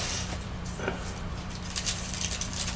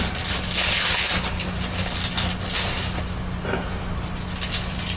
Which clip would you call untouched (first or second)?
second